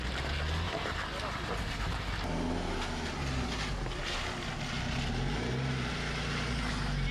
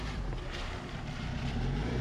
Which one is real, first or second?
first